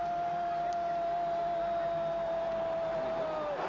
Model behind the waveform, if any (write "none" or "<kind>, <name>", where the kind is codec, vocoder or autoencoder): none